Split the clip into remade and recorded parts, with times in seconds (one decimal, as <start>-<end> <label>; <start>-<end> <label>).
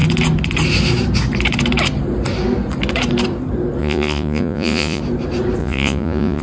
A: 0.0-3.8 recorded; 3.8-5.0 remade; 5.0-5.6 recorded; 5.6-6.4 remade